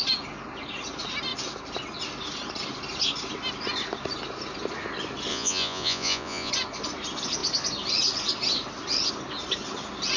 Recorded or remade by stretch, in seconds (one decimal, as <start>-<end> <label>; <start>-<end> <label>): 0.0-5.3 recorded; 5.3-6.5 remade; 6.5-10.2 recorded